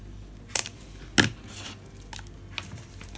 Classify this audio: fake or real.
real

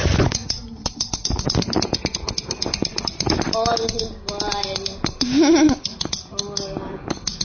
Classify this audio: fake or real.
real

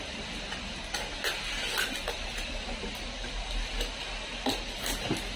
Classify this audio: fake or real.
real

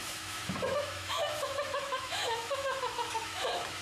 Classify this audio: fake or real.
fake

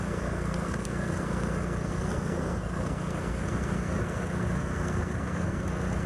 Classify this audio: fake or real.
fake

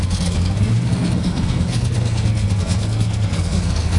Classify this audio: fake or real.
fake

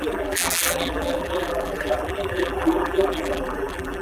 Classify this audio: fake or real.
fake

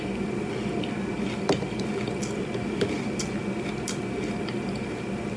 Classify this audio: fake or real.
real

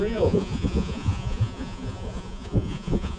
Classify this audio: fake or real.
fake